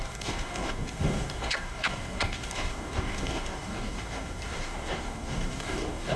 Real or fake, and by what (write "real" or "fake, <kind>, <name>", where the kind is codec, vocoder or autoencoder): fake, codec, DAC